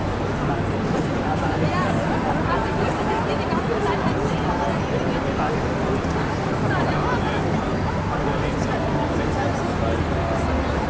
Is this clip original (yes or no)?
yes